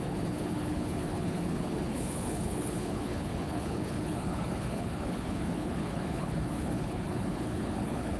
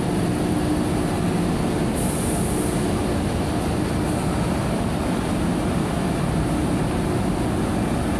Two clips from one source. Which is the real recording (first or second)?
second